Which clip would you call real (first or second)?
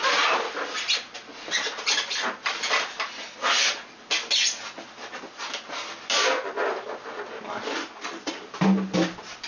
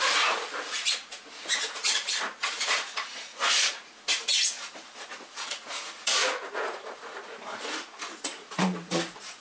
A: first